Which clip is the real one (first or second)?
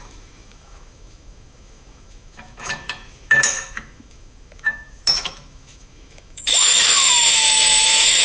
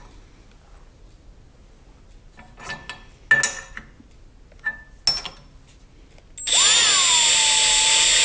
second